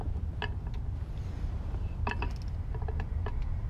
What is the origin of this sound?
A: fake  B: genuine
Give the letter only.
B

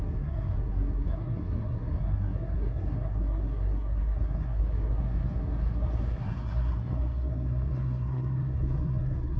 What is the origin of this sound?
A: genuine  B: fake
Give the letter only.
B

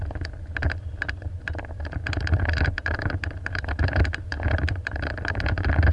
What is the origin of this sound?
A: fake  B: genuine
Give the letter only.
A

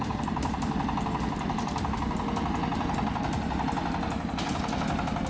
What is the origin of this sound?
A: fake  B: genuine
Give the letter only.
B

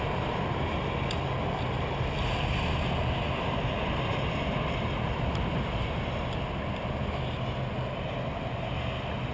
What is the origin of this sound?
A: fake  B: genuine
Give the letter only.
B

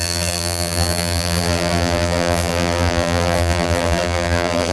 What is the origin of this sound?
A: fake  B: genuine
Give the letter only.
A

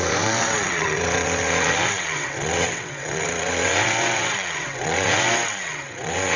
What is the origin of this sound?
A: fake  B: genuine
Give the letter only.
A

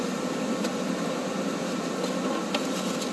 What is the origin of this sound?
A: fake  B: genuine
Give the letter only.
B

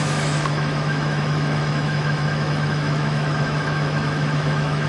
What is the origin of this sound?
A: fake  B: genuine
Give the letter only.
A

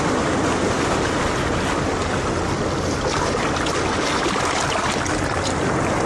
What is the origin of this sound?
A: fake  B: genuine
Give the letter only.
B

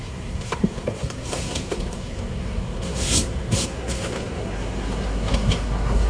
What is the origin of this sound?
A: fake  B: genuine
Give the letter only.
A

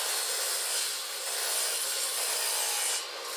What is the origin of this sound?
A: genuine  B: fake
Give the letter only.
A